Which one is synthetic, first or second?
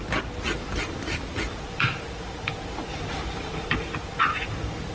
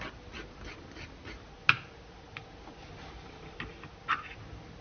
first